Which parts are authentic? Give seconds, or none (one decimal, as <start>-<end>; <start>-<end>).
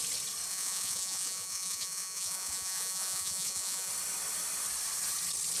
0.0-0.5; 3.9-5.6